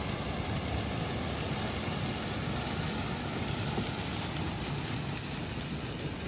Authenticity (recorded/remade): recorded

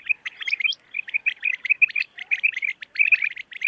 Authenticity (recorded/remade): recorded